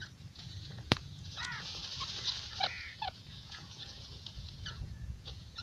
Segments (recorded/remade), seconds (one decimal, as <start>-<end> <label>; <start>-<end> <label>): 0.0-1.8 remade; 1.8-2.7 recorded; 2.7-5.6 remade